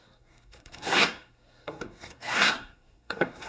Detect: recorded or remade remade